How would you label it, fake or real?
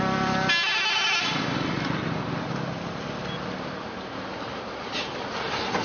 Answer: real